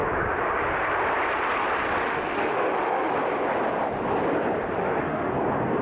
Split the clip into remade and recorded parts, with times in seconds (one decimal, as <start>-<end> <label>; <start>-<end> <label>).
0.0-2.0 recorded; 2.0-3.1 remade; 3.1-4.8 recorded; 4.8-5.3 remade; 5.3-5.8 recorded